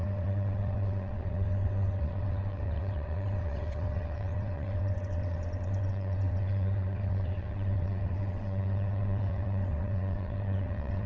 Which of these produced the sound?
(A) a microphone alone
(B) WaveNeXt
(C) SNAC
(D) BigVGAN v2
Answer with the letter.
B